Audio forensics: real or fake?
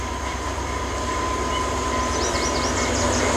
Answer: real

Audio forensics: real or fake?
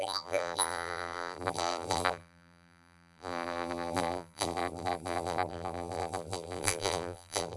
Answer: fake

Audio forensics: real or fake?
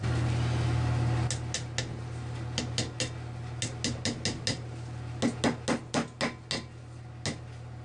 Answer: real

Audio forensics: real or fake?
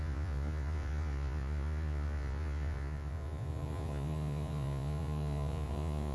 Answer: fake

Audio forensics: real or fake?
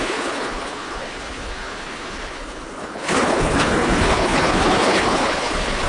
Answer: fake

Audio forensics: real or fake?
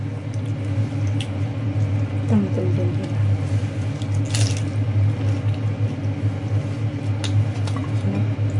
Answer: real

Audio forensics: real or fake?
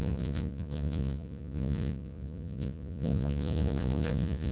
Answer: fake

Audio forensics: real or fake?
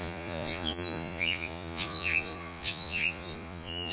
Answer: fake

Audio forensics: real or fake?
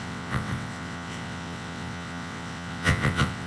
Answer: fake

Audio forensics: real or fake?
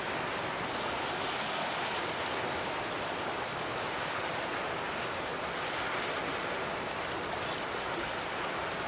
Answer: real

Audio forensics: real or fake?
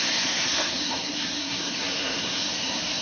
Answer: fake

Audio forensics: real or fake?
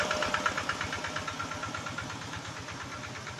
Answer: real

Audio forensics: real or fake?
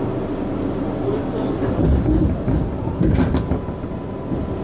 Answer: real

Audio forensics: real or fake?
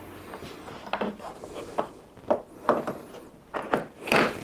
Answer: real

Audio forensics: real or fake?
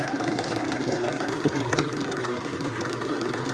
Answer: fake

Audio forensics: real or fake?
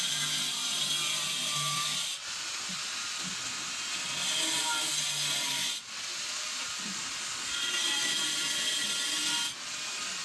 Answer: real